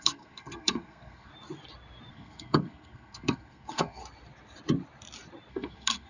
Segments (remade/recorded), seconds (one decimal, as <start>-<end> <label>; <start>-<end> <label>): 0.0-1.3 remade; 1.3-2.1 recorded; 2.1-4.0 remade; 4.0-5.5 recorded; 5.5-6.1 remade